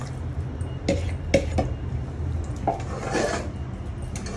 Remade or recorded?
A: recorded